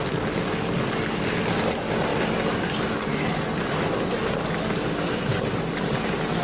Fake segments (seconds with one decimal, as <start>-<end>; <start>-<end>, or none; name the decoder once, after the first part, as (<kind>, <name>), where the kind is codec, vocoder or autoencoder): none